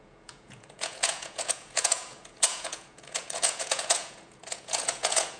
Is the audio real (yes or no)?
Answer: no